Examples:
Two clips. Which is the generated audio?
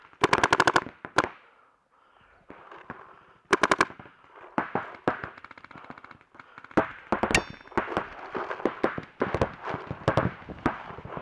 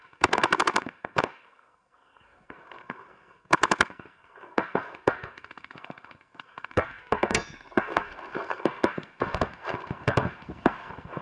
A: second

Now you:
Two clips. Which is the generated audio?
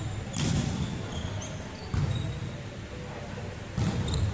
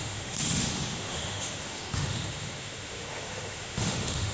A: second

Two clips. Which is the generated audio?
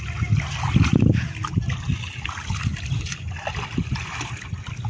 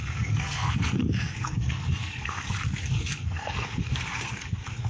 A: second